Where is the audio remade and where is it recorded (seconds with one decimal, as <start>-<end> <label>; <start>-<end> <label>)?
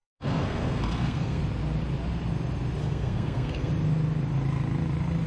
0.0-1.4 remade; 1.4-2.8 recorded; 2.8-3.7 remade; 3.7-5.3 recorded